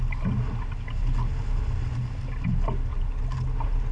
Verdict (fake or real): real